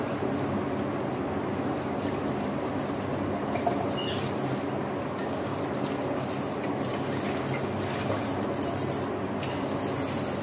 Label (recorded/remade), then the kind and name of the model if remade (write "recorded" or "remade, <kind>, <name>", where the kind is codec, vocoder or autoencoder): recorded